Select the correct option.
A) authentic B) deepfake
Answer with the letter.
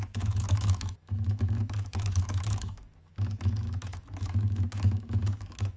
B